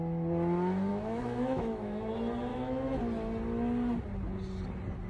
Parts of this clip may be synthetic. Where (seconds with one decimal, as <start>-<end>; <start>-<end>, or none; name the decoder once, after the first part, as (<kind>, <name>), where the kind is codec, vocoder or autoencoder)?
0.9-2.1 (autoencoder, DAC-VAE); 2.5-3.0